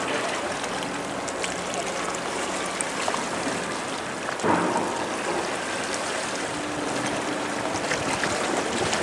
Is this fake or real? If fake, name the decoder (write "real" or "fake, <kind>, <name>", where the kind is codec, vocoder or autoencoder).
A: real